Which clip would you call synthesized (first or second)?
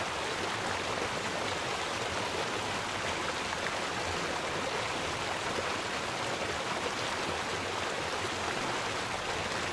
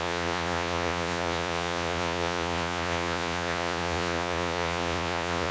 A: second